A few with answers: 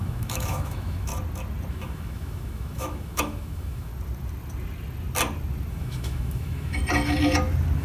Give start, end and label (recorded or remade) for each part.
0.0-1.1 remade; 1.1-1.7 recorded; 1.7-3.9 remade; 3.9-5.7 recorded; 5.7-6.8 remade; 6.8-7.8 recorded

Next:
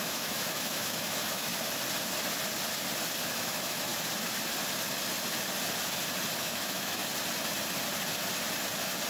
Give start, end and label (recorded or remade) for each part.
0.0-1.5 remade; 1.5-3.3 recorded; 3.3-3.9 remade; 3.9-6.4 recorded; 6.4-7.0 remade; 7.0-9.1 recorded

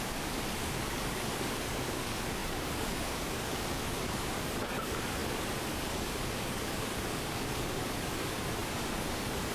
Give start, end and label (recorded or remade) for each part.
0.0-9.5 remade

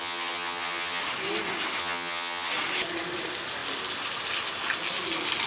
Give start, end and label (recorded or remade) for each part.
0.0-1.0 remade; 1.0-1.8 recorded; 1.8-2.5 remade; 2.5-5.5 recorded

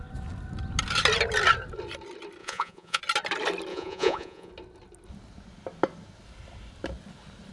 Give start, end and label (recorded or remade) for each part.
0.0-2.4 recorded; 2.4-3.0 remade; 3.0-3.7 recorded; 3.7-4.5 remade; 4.5-7.5 recorded

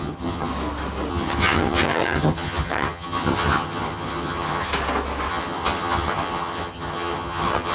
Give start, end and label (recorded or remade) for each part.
0.0-0.5 remade; 0.5-1.1 recorded; 1.1-4.7 remade; 4.7-5.3 recorded; 5.3-7.7 remade

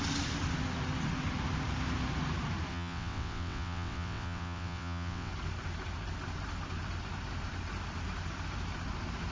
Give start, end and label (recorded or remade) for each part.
0.0-2.7 recorded; 2.7-5.3 remade; 5.3-9.3 recorded